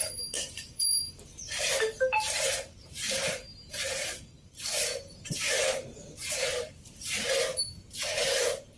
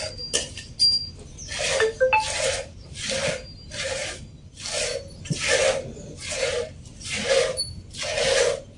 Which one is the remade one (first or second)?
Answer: first